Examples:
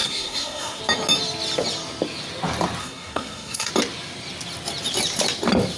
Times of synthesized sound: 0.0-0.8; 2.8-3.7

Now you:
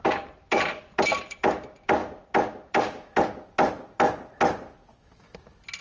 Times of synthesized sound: none

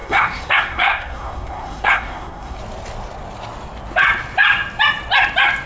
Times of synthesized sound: 0.0-2.6

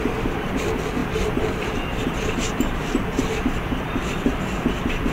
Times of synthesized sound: none

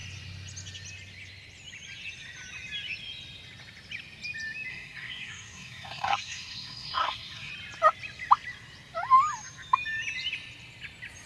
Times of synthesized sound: 4.7-7.5